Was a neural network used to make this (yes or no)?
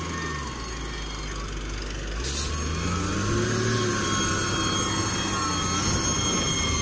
no